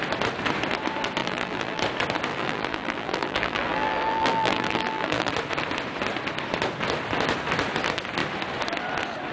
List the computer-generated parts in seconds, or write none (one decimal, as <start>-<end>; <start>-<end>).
1.2-1.8; 2.3-5.3